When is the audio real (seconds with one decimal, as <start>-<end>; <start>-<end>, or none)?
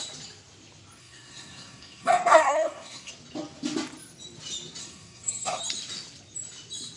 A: 0.0-1.0; 3.1-4.8; 5.6-7.0